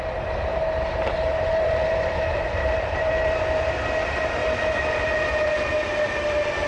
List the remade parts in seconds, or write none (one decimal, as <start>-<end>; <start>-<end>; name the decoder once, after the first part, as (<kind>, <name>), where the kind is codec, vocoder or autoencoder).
0.5-3.7 (vocoder, BigVGAN v2); 4.4-5.5